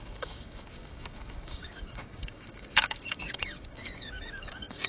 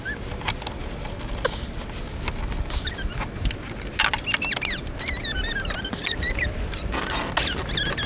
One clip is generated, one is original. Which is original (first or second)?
second